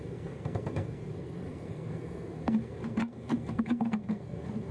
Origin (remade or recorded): remade